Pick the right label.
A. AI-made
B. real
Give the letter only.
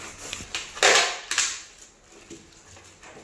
B